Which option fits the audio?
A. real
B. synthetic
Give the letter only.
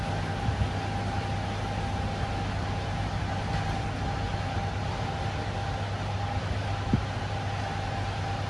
A